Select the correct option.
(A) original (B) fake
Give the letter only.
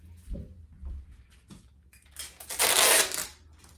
A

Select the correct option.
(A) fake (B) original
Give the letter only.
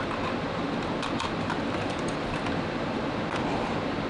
A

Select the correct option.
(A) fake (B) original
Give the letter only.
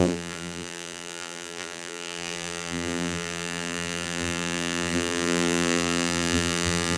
A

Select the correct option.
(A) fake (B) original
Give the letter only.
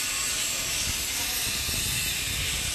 A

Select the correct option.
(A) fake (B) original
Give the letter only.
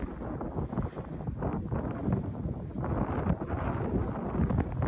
B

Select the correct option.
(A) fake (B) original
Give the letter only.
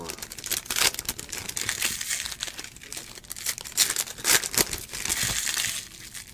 B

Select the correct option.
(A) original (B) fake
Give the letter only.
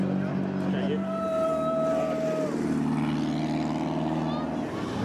A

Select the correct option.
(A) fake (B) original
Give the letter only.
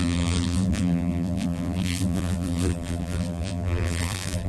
A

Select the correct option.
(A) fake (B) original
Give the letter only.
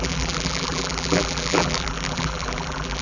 A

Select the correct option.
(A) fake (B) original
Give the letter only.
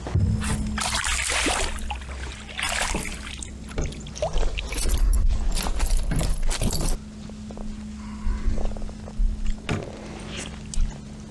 B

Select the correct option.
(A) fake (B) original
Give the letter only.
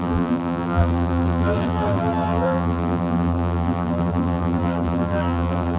A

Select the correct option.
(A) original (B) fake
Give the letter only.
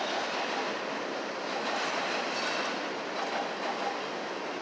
A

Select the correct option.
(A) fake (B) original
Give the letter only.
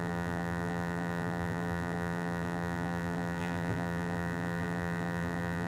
A